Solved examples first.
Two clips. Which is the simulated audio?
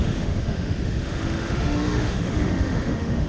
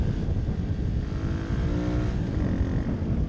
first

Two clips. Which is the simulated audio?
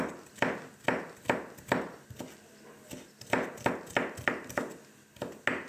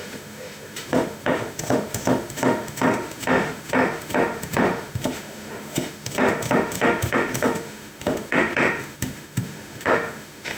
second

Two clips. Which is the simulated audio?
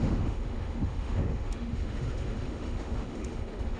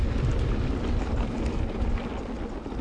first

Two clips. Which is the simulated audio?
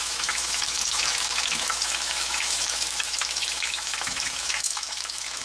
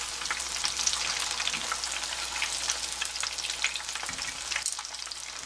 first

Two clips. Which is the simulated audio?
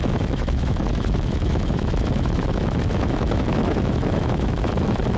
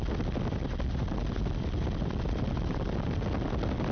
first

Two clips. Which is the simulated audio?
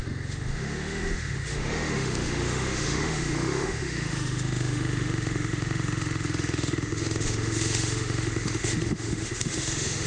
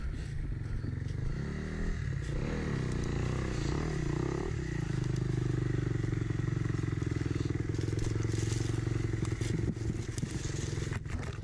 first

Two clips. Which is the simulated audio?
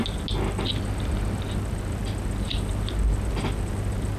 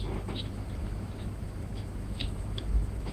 second